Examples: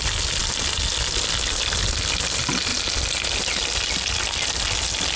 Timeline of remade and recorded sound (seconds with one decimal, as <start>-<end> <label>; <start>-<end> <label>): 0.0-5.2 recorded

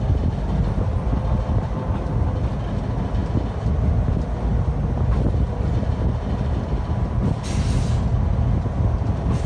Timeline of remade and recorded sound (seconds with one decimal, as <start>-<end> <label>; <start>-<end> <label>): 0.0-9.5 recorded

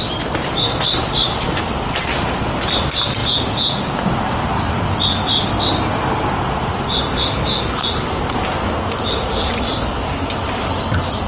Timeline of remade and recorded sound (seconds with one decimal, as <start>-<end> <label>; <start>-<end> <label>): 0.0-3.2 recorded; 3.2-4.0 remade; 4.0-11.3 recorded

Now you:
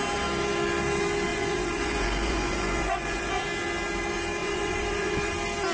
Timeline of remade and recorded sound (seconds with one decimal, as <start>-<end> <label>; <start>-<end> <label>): 0.0-1.3 recorded; 1.3-3.3 remade; 3.3-4.4 recorded; 4.4-5.3 remade; 5.3-5.7 recorded

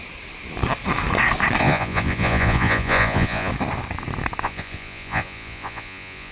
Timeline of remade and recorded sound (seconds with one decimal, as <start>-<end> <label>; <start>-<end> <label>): 0.0-1.6 recorded; 1.6-3.5 remade; 3.5-4.4 recorded; 4.4-6.3 remade

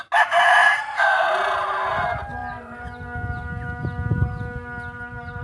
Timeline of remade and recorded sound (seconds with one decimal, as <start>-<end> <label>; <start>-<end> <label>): 0.0-5.4 recorded